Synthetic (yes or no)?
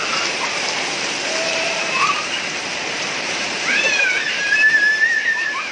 yes